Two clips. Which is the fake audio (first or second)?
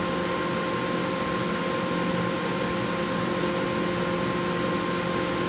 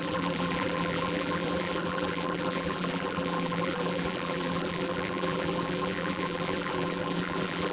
second